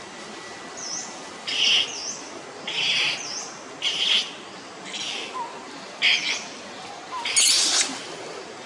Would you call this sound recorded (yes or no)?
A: yes